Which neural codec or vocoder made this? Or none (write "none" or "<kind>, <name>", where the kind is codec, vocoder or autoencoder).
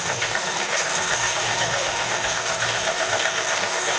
codec, DAC